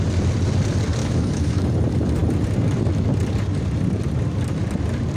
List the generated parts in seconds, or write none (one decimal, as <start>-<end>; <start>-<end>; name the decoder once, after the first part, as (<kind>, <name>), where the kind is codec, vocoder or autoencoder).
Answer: 1.0-1.6 (autoencoder, DAC-VAE)